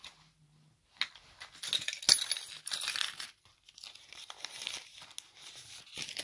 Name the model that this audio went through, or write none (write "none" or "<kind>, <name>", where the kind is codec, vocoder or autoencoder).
none